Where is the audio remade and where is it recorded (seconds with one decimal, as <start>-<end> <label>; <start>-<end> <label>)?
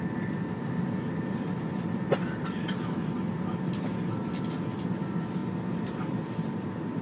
0.0-5.4 recorded; 5.4-7.0 remade